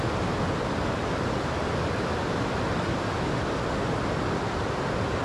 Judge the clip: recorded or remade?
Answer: recorded